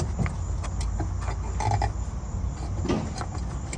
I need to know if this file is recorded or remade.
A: recorded